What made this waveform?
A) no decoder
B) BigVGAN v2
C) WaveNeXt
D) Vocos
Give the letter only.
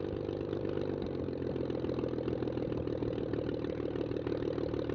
A